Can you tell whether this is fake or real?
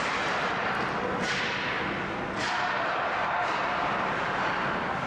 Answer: real